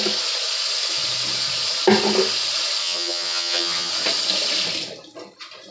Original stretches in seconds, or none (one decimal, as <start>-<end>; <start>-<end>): 0.0-2.8; 3.9-5.7